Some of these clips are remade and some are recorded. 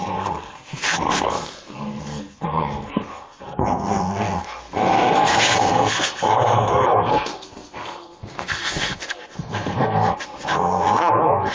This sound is remade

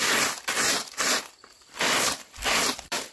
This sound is remade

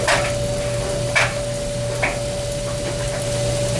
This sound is recorded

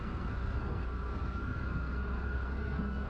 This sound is remade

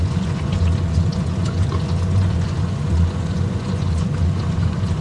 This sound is remade